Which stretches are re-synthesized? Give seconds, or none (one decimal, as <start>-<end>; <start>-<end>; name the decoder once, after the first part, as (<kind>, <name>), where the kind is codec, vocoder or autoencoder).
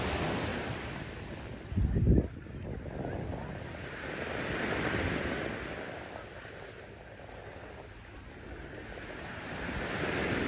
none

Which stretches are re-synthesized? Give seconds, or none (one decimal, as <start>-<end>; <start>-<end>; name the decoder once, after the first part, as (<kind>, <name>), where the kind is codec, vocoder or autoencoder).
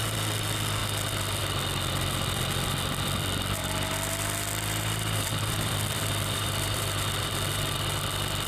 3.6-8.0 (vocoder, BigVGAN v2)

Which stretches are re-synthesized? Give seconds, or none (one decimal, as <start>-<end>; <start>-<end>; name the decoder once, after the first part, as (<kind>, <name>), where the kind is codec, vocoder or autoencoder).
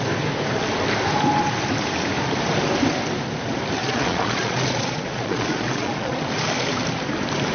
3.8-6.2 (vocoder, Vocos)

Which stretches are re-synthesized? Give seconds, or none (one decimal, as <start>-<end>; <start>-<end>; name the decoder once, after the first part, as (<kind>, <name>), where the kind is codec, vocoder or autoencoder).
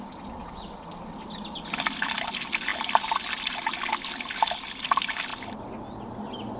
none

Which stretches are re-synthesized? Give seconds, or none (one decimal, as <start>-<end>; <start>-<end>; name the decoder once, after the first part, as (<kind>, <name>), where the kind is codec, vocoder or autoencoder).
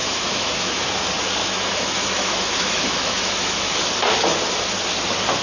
0.0-0.9 (autoencoder, DAC-VAE); 1.4-3.8